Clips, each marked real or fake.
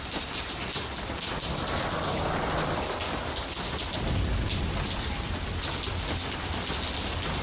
real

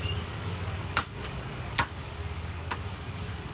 fake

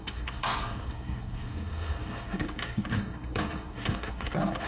fake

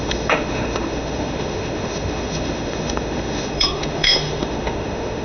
fake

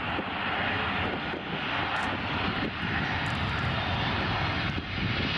real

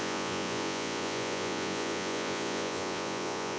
fake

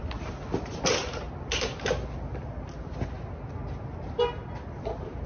real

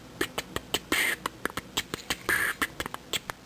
real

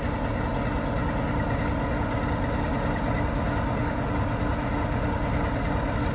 real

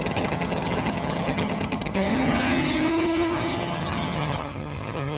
fake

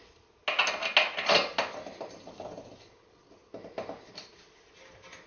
real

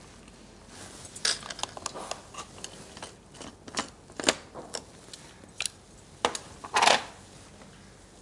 real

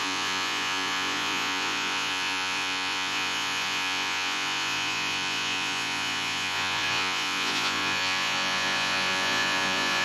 fake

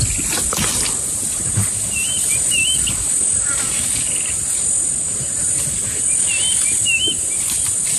real